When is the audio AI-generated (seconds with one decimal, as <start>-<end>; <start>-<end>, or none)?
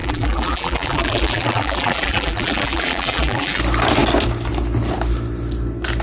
0.0-3.6